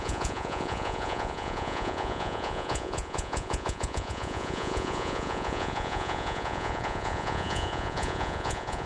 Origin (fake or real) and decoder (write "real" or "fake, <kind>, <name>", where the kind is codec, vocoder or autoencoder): fake, vocoder, Vocos